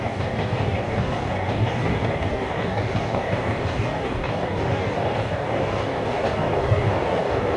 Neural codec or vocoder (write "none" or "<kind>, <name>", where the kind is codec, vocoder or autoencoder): codec, DAC